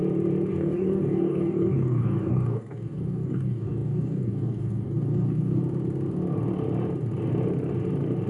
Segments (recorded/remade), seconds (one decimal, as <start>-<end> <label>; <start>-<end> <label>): 0.0-0.5 recorded; 0.5-5.6 remade; 5.6-8.3 recorded